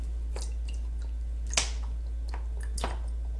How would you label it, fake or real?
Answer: real